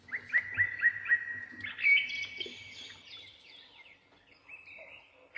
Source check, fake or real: real